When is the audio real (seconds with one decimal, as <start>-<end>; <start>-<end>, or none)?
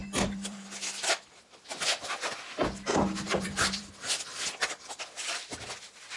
1.4-2.9; 5.0-6.2